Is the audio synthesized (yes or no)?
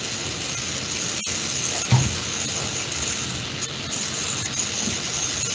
no